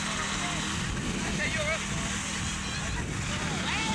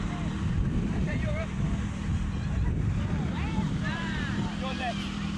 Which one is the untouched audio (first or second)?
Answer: first